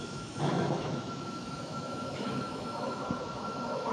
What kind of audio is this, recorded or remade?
remade